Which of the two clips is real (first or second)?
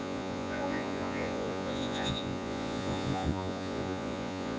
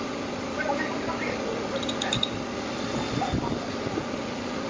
second